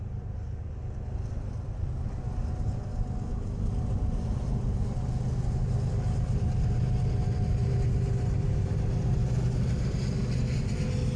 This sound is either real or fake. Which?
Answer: real